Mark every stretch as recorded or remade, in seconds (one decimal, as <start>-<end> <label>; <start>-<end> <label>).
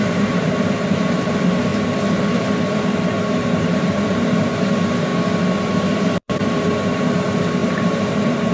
0.0-1.7 remade; 1.7-3.3 recorded; 3.3-5.1 remade; 5.1-5.8 recorded; 5.8-8.5 remade